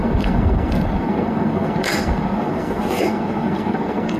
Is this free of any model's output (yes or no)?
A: no